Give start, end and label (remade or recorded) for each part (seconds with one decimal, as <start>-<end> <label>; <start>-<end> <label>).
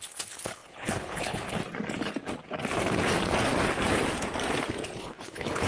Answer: 0.0-1.6 remade; 1.6-5.0 recorded; 5.0-5.7 remade